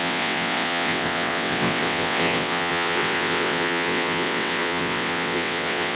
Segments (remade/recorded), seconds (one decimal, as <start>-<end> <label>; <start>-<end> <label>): 0.0-5.9 remade